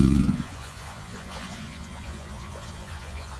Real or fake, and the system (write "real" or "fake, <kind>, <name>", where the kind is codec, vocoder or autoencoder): fake, vocoder, Vocos